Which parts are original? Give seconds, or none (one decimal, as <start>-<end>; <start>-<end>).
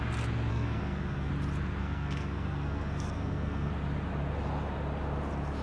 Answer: 0.0-0.5; 1.3-1.8; 3.7-5.6